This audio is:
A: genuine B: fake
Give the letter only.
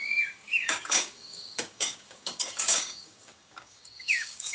B